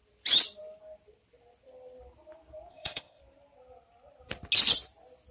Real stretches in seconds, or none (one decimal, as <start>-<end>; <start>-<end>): 0.0-2.7; 3.2-5.3